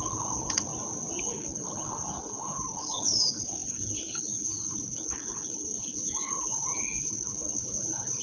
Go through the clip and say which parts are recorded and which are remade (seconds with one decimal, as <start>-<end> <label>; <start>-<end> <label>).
0.0-0.7 remade; 0.7-1.2 recorded; 1.2-8.2 remade